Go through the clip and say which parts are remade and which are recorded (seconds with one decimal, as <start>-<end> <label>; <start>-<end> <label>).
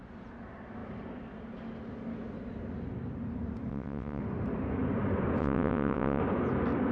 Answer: 0.0-3.7 recorded; 3.7-4.2 remade; 4.2-5.4 recorded; 5.4-6.2 remade; 6.2-6.9 recorded